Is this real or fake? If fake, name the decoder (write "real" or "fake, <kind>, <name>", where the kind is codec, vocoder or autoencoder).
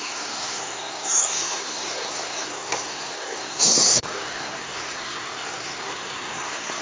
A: fake, codec, SNAC